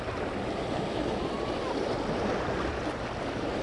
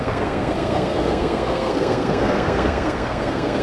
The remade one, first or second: second